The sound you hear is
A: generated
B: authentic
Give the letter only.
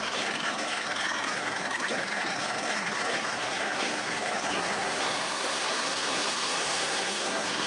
A